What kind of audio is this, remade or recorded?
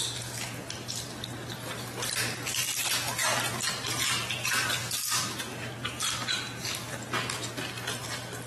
recorded